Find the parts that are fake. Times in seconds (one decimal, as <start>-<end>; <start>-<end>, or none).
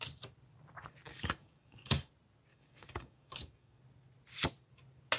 1.1-2.1; 2.5-3.8